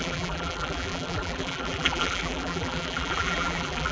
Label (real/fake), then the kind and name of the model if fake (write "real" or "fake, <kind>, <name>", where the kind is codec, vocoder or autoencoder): fake, vocoder, BigVGAN v2